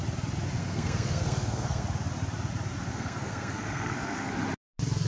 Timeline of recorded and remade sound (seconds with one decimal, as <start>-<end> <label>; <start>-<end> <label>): 0.0-0.6 recorded; 0.6-1.8 remade; 1.8-2.9 recorded; 2.9-4.3 remade; 4.3-5.1 recorded

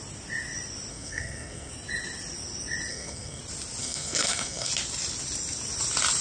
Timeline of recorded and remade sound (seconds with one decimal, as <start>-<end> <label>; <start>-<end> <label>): 0.0-0.9 recorded; 0.9-1.7 remade; 1.7-2.9 recorded; 2.9-3.4 remade; 3.4-3.8 recorded; 3.8-4.7 remade; 4.7-6.2 recorded